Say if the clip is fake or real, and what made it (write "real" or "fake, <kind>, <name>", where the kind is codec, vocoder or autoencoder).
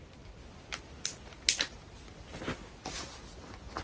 real